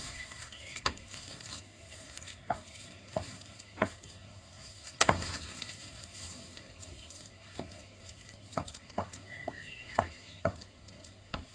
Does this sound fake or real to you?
fake